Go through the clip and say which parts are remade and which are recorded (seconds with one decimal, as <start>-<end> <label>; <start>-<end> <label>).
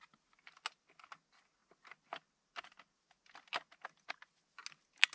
0.0-5.1 recorded